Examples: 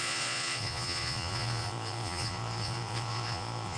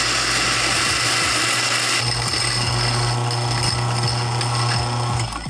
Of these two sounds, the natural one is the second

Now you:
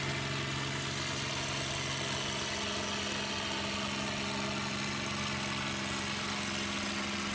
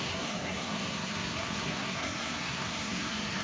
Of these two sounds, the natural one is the first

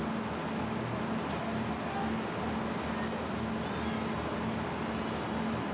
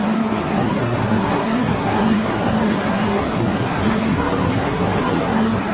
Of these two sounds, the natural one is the first